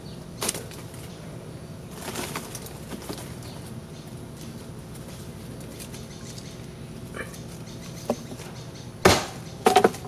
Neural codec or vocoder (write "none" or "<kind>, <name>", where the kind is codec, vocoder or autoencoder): none